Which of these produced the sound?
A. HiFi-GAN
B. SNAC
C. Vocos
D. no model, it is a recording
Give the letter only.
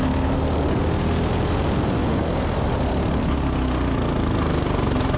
D